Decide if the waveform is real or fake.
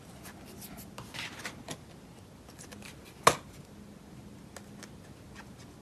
real